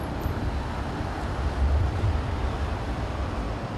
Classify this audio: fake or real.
real